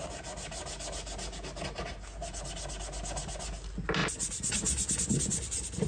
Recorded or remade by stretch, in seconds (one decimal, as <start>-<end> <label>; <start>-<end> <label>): 0.0-5.9 recorded